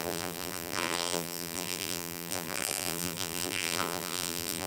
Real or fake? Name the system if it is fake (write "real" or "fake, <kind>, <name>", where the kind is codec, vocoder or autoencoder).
fake, vocoder, BigVGAN v2